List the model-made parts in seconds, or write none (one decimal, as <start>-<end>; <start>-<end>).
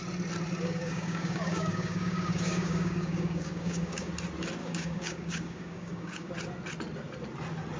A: 0.6-4.1; 4.6-6.3